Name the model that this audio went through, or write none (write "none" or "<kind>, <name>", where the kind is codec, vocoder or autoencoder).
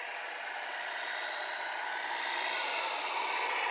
none